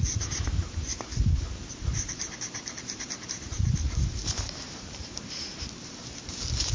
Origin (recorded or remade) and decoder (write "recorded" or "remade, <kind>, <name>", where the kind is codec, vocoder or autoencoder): remade, vocoder, BigVGAN v2